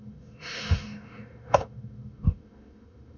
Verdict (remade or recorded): remade